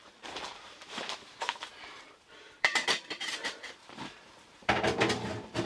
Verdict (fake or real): fake